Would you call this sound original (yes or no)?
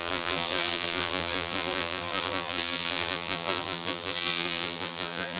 no